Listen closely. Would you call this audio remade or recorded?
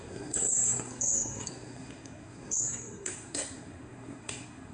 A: remade